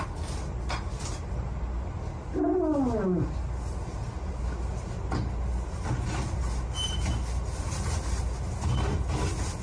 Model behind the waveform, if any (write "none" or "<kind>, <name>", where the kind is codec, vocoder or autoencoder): none